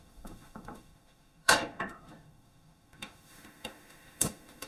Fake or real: fake